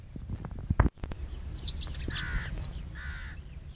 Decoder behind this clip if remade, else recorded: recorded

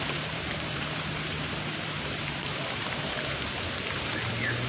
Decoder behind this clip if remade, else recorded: remade, vocoder, BigVGAN v2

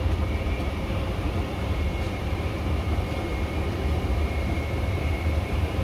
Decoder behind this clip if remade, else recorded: remade, vocoder, BigVGAN v2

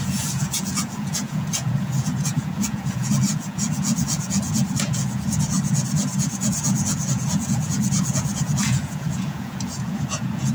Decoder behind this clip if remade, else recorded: remade, vocoder, Vocos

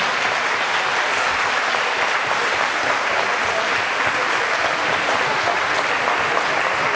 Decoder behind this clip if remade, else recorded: recorded